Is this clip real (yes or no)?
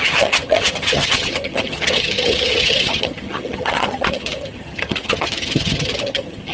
no